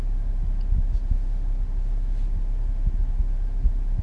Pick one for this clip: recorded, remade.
recorded